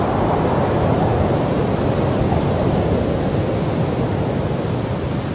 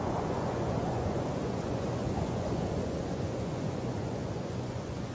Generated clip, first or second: second